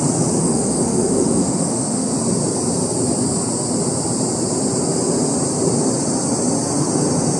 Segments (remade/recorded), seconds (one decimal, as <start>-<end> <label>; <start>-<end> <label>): 0.0-0.4 recorded; 0.4-2.1 remade; 2.1-7.4 recorded